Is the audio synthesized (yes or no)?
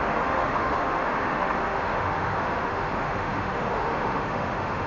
yes